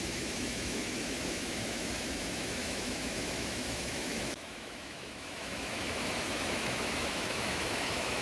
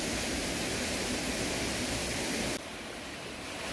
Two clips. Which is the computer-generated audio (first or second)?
first